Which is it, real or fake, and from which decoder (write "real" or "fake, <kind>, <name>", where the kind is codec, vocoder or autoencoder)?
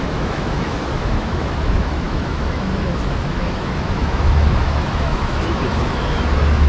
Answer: fake, autoencoder, DAC-VAE